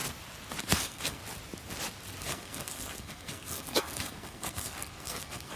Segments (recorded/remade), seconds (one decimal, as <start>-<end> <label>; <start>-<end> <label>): 0.0-0.6 recorded; 0.6-1.2 remade; 1.2-2.2 recorded; 2.2-5.6 remade